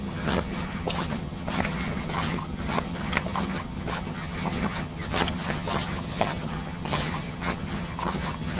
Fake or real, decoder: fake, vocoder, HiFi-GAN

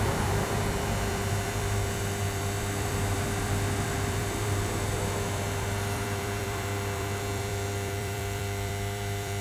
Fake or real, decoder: fake, vocoder, BigVGAN v2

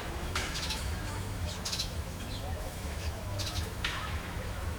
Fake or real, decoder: fake, autoencoder, DAC-VAE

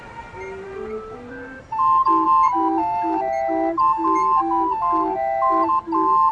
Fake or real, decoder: real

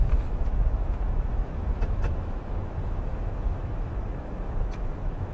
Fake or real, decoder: fake, autoencoder, DAC-VAE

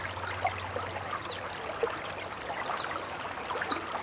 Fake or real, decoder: real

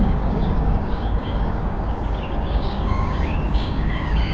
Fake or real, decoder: fake, codec, DAC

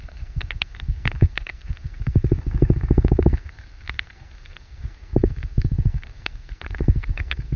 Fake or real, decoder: fake, codec, SNAC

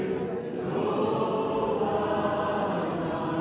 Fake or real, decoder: real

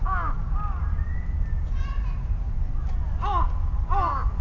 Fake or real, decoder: real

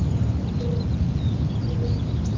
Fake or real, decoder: real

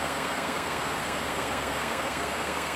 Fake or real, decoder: fake, codec, SNAC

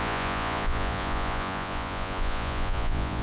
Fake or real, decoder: fake, vocoder, Vocos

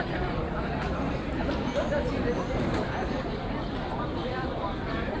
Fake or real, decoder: fake, vocoder, BigVGAN v2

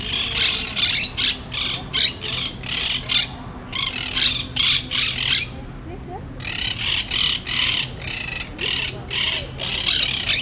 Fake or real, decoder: real